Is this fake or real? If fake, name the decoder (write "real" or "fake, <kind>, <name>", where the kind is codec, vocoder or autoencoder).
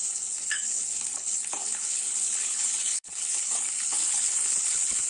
fake, codec, HILCodec